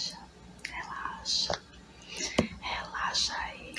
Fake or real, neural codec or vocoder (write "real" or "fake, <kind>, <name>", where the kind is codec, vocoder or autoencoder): real